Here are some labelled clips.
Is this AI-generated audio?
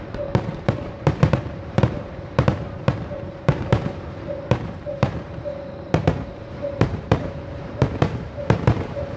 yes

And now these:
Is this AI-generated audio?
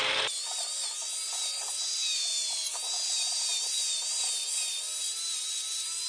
no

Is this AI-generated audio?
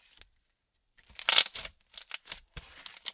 no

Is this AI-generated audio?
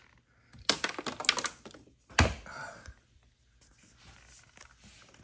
no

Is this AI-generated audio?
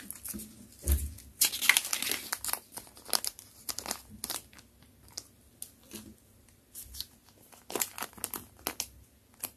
no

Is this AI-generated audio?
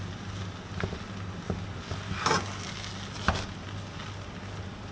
no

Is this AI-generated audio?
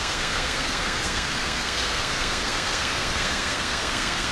yes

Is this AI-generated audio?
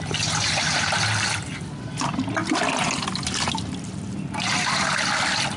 no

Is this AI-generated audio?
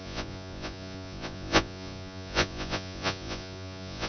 yes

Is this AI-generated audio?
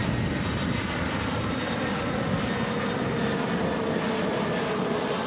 no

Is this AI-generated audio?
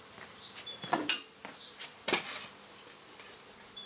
yes